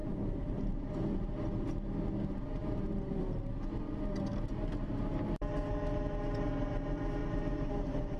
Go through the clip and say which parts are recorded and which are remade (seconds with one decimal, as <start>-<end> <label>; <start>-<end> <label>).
0.0-1.2 remade; 1.2-2.6 recorded; 2.6-3.2 remade; 3.2-7.2 recorded; 7.2-7.7 remade; 7.7-8.2 recorded